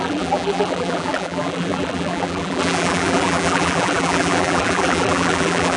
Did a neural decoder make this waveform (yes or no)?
yes